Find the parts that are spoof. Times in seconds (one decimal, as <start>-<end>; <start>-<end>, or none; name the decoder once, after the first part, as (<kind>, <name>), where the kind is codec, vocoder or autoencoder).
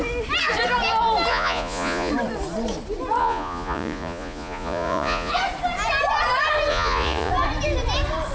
1.3-2.1 (vocoder, Vocos); 3.2-5.3; 6.7-7.3